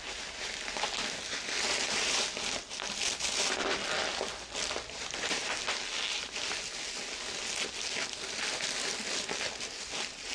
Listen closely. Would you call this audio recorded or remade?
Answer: recorded